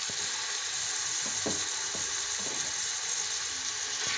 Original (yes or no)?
yes